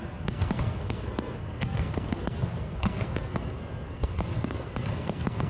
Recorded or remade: remade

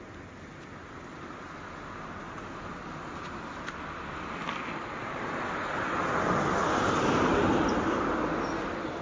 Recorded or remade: recorded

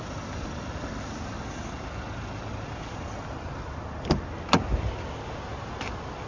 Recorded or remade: recorded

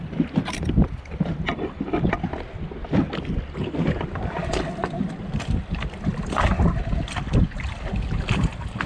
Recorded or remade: recorded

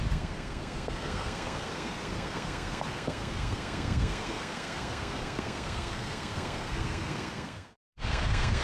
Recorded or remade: remade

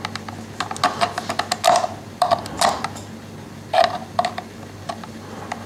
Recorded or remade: recorded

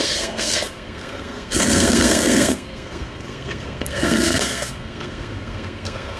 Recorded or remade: remade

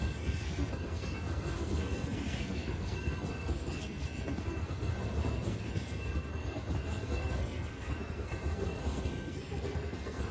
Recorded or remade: remade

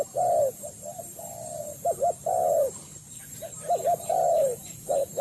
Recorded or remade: recorded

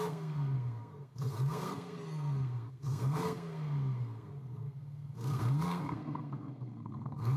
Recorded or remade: remade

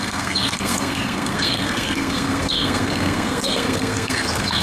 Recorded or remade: remade